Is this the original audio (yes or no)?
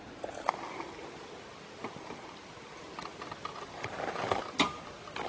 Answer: yes